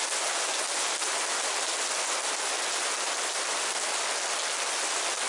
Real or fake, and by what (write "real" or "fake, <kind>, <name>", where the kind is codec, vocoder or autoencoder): real